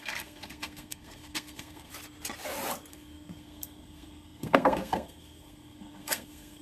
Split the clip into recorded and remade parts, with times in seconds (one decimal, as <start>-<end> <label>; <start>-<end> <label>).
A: 0.0-1.9 remade; 1.9-2.9 recorded; 2.9-6.6 remade